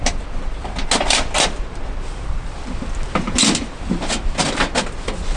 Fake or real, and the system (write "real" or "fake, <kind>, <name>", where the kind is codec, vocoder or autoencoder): real